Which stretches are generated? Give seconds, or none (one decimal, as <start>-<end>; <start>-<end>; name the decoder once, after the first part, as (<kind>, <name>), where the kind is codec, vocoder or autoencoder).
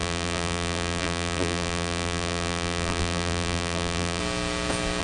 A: 0.0-4.2 (vocoder, BigVGAN v2)